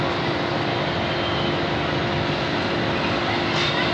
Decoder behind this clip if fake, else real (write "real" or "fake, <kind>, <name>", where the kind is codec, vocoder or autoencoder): real